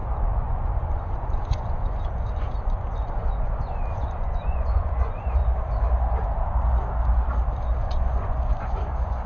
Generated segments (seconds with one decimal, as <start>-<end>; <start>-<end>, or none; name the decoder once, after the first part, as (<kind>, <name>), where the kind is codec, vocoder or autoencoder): 0.0-5.4 (vocoder, Vocos); 7.8-9.3